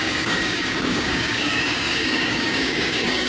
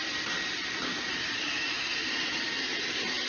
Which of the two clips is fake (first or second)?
first